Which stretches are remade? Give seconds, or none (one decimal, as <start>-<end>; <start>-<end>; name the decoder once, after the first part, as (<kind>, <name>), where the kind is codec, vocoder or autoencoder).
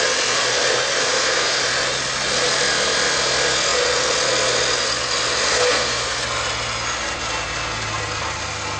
1.0-1.6 (codec, SNAC); 5.5-6.2